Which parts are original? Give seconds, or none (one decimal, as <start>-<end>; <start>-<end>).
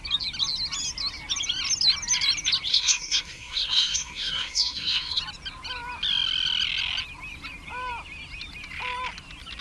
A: 0.0-2.7; 5.2-9.6